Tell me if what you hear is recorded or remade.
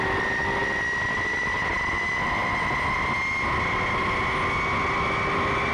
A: recorded